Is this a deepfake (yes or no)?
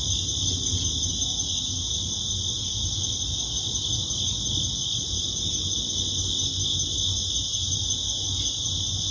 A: no